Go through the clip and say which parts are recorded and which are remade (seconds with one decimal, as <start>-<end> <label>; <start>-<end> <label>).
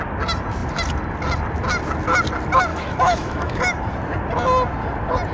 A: 0.0-2.7 recorded; 2.7-3.6 remade; 3.6-5.3 recorded